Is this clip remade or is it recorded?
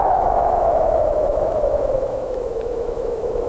remade